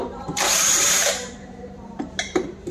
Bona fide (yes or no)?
no